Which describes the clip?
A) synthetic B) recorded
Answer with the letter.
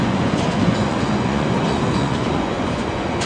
A